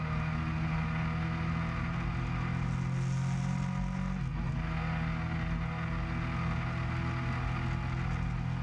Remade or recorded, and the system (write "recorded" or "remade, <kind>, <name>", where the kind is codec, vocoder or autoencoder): recorded